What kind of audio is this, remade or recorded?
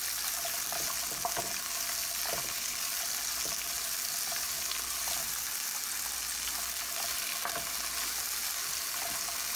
recorded